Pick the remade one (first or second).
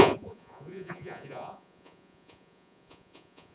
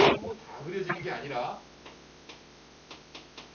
first